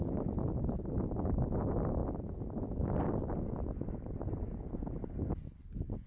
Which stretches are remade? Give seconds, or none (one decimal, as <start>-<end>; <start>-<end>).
none